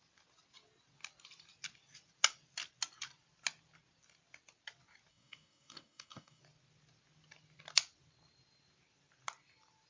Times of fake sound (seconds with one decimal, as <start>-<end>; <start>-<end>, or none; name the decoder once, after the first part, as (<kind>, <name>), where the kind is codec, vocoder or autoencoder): 5.1-6.4 (codec, DAC)